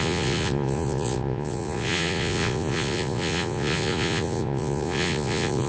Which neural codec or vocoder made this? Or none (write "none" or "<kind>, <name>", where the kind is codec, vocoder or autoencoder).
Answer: vocoder, Vocos